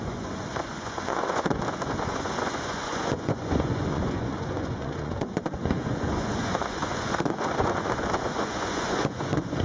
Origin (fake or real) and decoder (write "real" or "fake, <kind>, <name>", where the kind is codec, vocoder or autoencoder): fake, vocoder, Vocos